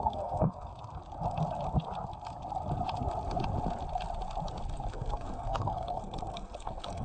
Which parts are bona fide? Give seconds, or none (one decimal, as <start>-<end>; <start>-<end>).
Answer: 0.7-4.9